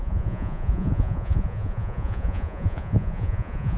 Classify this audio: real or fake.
fake